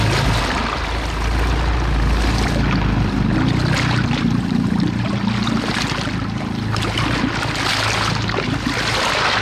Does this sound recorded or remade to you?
recorded